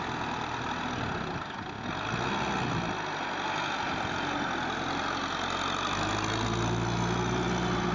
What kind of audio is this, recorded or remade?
recorded